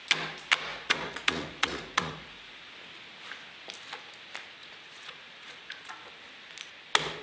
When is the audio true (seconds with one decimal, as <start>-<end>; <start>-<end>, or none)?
0.0-0.7; 2.7-4.6; 5.9-7.2